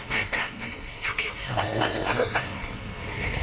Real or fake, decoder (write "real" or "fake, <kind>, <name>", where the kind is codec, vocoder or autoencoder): fake, codec, SNAC